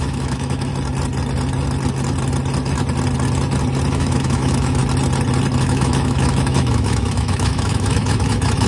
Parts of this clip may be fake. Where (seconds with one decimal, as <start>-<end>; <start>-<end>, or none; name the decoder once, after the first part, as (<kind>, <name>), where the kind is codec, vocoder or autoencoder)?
0.0-0.7 (autoencoder, DAC-VAE); 3.9-4.8; 5.6-8.7